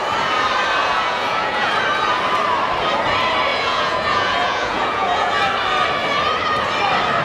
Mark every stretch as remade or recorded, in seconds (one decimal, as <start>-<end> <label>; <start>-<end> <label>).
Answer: 0.0-0.8 recorded; 0.8-1.7 remade; 1.7-3.5 recorded; 3.5-5.3 remade; 5.3-7.2 recorded